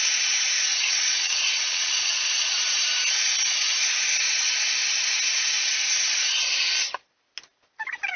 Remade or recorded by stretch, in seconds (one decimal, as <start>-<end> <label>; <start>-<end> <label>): 0.0-0.7 recorded; 0.7-2.6 remade; 2.6-8.2 recorded